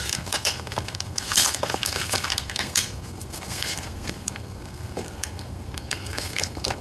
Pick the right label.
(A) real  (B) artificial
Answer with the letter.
B